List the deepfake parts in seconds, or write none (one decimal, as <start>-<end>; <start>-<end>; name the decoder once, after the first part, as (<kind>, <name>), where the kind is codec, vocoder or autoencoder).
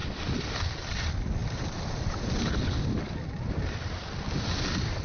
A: 0.0-5.0 (vocoder, BigVGAN v2)